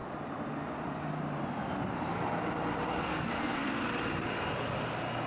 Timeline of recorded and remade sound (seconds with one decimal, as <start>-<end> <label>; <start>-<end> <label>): 0.0-3.0 recorded; 3.0-3.8 remade; 3.8-5.3 recorded